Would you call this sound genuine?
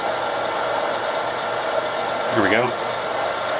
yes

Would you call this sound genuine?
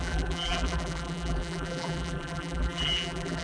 no